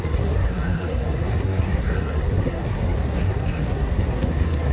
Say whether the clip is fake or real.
fake